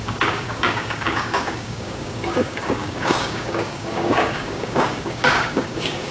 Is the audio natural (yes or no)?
no